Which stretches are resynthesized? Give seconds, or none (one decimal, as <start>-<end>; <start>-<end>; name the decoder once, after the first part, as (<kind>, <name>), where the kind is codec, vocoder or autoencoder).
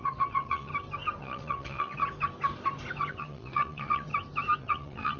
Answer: 0.0-0.7 (vocoder, WaveNeXt); 1.2-2.0; 3.1-4.1; 4.6-5.2